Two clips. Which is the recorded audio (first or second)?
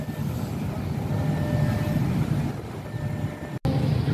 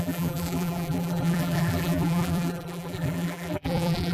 first